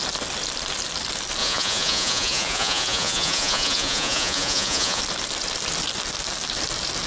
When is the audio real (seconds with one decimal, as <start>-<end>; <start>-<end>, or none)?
0.0-1.4; 5.0-7.1